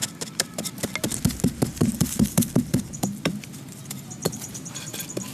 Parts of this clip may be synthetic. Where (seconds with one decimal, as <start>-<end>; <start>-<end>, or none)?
1.7-3.3; 4.2-4.7